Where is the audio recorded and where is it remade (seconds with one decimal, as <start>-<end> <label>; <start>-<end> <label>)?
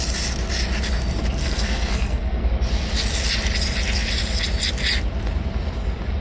0.0-1.4 recorded; 1.4-2.5 remade; 2.5-6.2 recorded